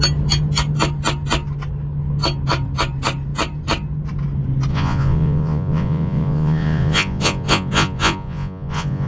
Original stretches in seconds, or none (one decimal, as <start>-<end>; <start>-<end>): 0.0-4.7